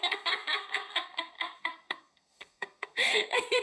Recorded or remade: remade